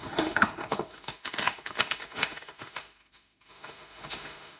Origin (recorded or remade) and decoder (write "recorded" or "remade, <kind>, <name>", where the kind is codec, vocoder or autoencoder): remade, autoencoder, DAC-VAE